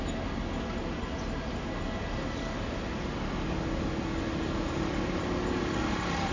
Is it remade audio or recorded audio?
recorded